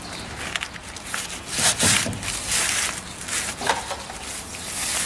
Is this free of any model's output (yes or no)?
yes